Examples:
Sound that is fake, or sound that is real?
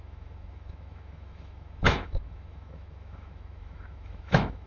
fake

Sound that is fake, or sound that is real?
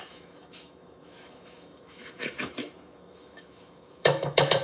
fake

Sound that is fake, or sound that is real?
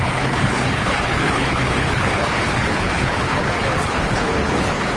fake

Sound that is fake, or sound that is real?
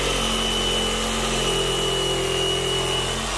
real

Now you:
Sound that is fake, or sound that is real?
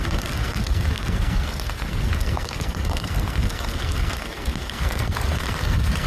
fake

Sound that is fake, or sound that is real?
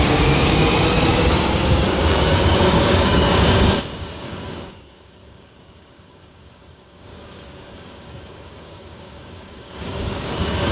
fake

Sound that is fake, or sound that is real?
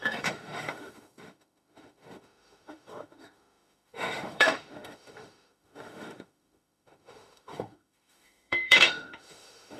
fake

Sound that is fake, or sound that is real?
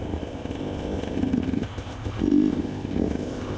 fake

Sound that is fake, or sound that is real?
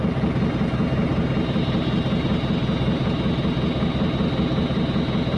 real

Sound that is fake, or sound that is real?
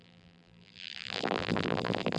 fake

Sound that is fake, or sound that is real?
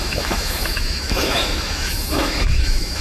fake